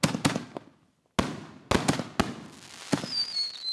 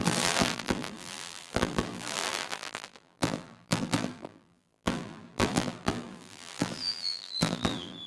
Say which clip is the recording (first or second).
first